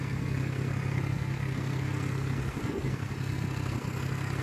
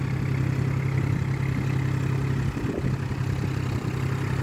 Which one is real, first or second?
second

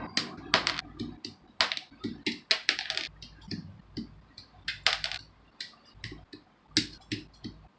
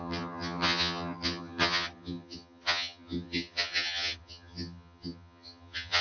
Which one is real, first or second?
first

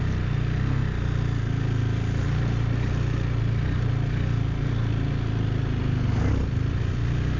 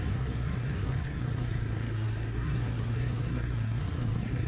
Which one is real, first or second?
first